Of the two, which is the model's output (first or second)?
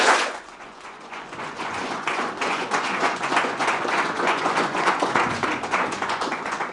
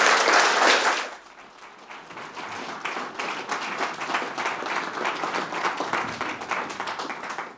first